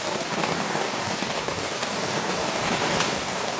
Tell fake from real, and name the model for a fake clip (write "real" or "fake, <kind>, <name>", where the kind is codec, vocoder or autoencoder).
fake, codec, DAC